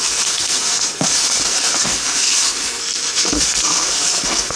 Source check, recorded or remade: remade